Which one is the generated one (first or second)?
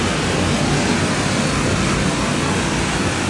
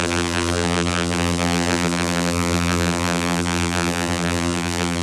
second